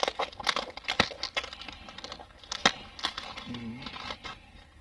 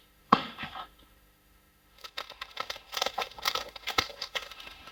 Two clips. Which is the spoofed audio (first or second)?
second